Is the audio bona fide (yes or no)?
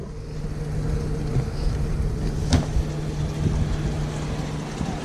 yes